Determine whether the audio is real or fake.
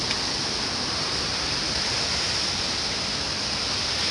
real